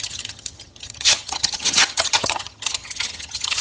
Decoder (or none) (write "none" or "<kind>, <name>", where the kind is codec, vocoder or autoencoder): vocoder, HiFi-GAN